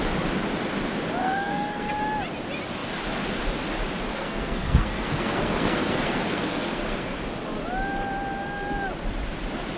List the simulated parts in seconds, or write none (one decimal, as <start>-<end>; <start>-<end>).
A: 1.2-1.9; 4.1-7.2